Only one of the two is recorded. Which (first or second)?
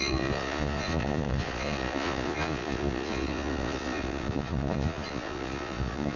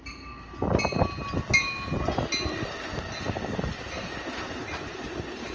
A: second